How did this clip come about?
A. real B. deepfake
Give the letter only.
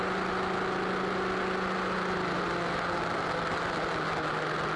A